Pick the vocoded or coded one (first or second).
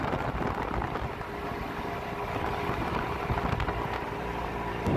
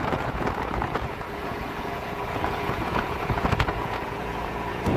second